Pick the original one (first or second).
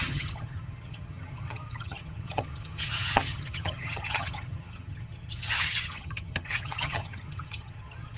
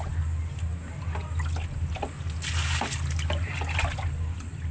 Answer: second